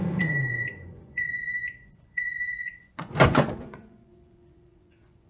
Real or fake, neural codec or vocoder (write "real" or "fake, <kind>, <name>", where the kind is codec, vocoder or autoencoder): fake, vocoder, Vocos